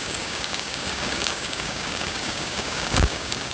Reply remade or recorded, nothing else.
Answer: remade